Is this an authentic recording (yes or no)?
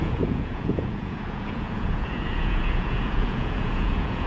no